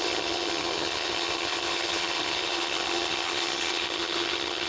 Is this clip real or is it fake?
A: fake